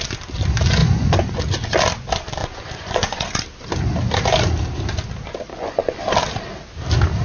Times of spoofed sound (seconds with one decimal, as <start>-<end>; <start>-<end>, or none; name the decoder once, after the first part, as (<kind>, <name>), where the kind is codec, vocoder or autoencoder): 0.8-1.4 (vocoder, Vocos); 2.4-3.4; 5.5-6.0